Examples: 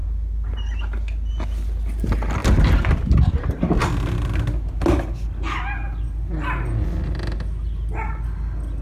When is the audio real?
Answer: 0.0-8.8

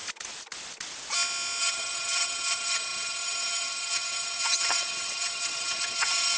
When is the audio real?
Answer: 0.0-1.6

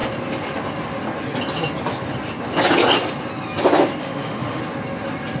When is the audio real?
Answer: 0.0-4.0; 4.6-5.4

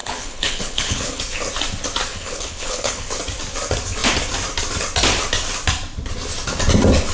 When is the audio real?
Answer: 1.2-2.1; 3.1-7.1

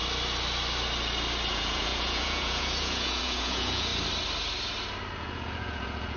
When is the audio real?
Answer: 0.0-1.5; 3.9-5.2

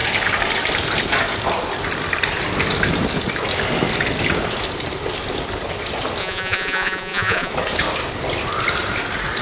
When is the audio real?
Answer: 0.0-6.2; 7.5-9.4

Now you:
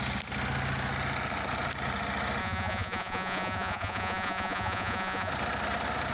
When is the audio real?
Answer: 0.0-2.4; 5.3-6.1

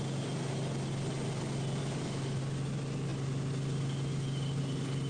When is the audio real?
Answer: 0.0-1.8; 2.4-5.1